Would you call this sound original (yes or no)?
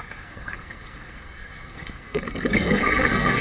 no